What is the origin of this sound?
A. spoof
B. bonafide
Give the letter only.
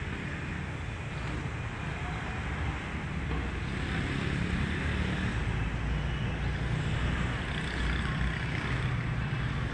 B